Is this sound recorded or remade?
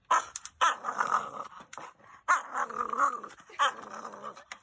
recorded